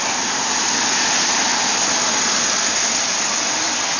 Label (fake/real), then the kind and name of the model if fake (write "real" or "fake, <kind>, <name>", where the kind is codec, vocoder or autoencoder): real